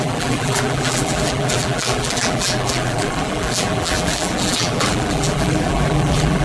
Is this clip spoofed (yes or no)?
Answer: yes